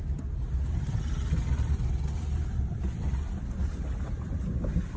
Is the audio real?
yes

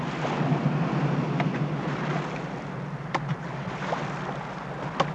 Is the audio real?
yes